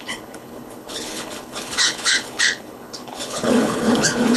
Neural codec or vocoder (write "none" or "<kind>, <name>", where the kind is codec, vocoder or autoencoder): codec, HILCodec